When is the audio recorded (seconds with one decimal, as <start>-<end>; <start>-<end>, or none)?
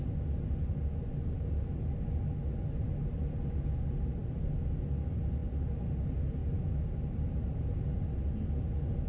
0.0-4.2; 4.7-9.1